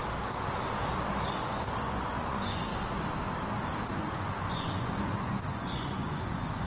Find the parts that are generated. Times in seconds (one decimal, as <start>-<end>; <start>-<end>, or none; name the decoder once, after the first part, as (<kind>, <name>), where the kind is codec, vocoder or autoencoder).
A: 1.4-2.7 (vocoder, Vocos); 3.9-6.7